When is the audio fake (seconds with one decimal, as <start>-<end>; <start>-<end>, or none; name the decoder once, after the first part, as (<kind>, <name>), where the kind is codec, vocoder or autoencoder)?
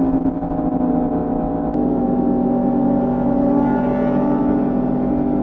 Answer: none